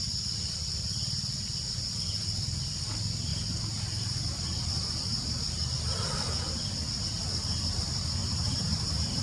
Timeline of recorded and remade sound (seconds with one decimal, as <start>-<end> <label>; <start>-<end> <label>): 0.0-8.2 recorded; 8.2-9.2 remade